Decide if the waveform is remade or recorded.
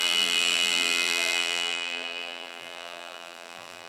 remade